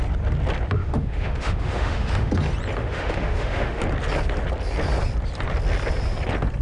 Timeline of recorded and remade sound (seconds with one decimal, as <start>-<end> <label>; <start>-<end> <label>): 0.0-0.8 recorded; 0.8-2.3 remade; 2.3-2.8 recorded; 2.8-3.8 remade; 3.8-6.6 recorded